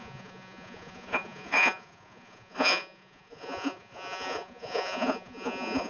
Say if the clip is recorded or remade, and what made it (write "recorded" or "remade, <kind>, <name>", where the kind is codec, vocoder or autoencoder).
remade, vocoder, Vocos